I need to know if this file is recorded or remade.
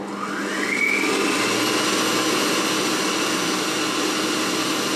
recorded